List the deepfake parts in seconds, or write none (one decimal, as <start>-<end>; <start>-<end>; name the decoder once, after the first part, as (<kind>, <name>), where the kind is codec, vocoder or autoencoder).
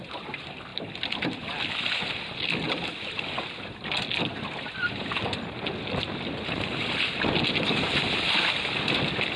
none